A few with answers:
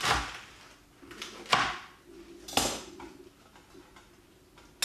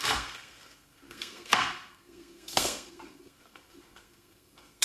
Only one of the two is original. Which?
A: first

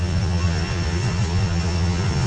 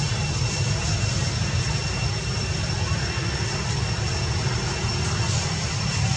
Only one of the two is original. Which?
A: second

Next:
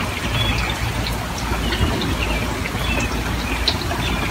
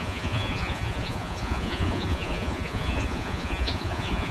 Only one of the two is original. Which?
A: first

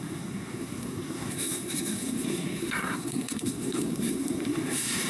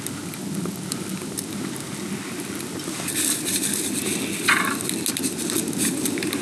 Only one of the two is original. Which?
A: second